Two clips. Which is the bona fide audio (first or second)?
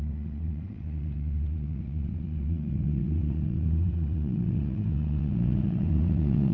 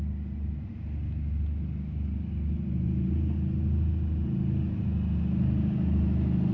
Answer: second